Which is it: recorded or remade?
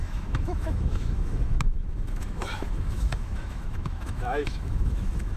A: remade